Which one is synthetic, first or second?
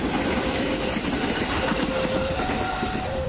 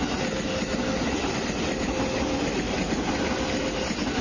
first